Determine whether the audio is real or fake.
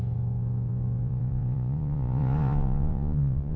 fake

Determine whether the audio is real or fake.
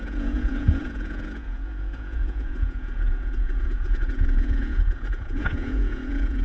fake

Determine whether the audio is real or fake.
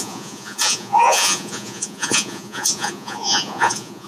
fake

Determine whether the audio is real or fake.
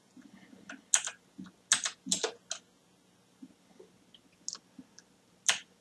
real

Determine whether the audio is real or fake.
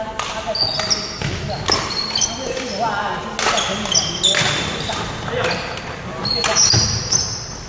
real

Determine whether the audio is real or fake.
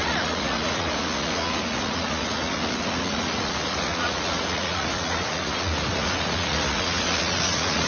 fake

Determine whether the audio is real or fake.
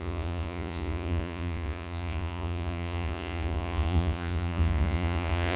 fake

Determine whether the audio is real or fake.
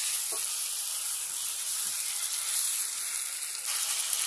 real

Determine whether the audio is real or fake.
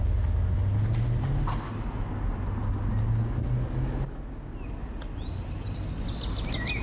real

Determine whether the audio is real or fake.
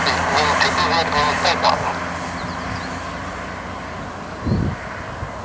real